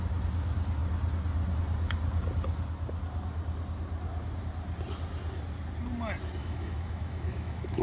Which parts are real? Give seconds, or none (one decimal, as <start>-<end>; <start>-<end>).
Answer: 0.0-6.4